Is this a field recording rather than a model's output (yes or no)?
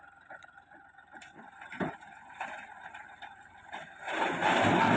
no